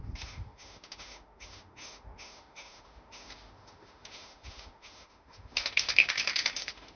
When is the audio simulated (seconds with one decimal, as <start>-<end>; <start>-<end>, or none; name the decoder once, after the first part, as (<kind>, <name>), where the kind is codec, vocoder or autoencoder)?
0.0-7.0 (autoencoder, DAC-VAE)